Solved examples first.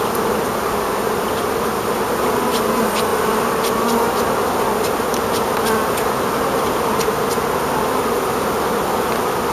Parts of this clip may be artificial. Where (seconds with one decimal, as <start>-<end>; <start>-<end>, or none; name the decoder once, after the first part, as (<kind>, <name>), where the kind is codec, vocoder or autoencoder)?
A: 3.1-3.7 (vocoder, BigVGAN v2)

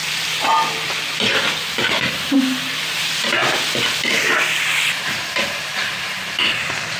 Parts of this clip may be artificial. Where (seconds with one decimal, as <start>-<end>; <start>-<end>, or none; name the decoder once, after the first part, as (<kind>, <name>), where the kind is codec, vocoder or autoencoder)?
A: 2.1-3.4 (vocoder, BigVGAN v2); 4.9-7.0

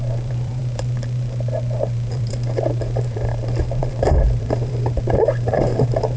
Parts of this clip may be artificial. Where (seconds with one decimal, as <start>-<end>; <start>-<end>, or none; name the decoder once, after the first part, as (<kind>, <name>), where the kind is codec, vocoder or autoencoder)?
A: 0.0-6.2 (vocoder, BigVGAN v2)

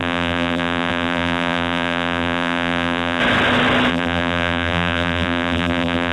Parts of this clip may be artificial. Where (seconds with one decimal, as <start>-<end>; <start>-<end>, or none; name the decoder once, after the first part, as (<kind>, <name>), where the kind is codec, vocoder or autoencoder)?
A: 0.0-3.2 (vocoder, BigVGAN v2); 3.9-6.1

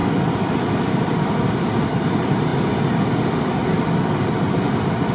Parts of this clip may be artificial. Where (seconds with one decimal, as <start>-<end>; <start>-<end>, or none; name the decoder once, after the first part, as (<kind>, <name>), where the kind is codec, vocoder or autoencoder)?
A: 0.0-2.1 (vocoder, BigVGAN v2)